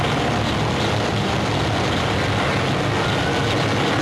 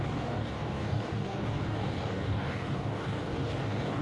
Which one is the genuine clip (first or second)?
first